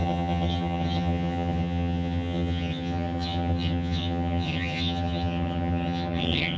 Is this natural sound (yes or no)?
no